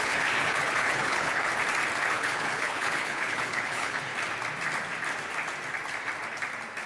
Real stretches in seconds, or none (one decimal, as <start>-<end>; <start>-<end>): 1.5-2.0; 4.1-6.9